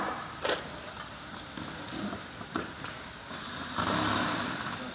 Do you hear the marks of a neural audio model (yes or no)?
yes